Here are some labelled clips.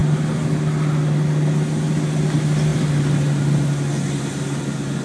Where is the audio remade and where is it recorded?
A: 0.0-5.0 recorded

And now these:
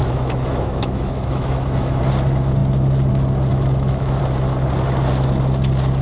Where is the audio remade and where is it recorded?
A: 0.0-2.0 remade; 2.0-3.5 recorded; 3.5-4.2 remade; 4.2-6.0 recorded

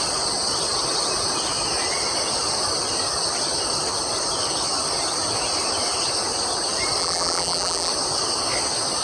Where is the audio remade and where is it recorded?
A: 0.0-7.0 recorded; 7.0-7.9 remade; 7.9-9.0 recorded

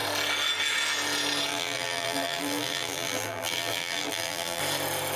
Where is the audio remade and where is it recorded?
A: 0.0-1.5 recorded; 1.5-4.6 remade; 4.6-5.2 recorded

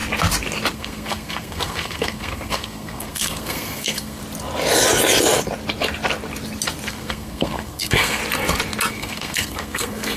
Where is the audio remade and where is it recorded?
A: 0.0-0.7 recorded; 0.7-4.2 remade; 4.2-6.9 recorded; 6.9-8.2 remade; 8.2-8.9 recorded; 8.9-10.2 remade